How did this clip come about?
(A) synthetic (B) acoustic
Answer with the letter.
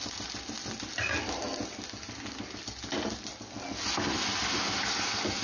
B